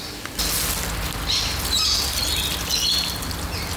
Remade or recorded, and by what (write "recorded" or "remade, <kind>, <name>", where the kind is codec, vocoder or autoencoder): recorded